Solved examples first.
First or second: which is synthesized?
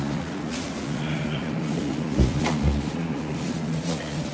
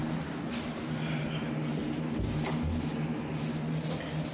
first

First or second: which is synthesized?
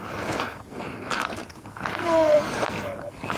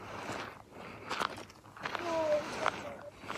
first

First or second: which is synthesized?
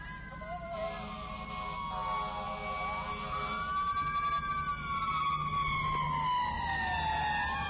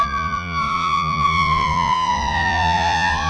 second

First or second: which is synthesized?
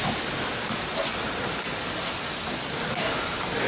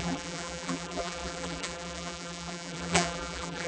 second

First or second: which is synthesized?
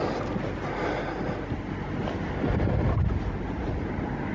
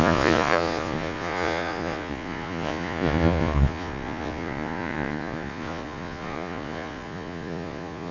second